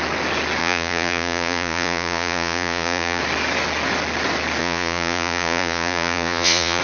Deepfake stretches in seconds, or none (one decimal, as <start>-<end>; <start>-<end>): 0.6-3.2; 4.6-6.8